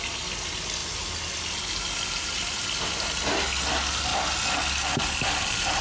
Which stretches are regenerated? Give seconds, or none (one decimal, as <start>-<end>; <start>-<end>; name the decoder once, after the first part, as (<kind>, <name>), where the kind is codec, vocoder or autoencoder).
none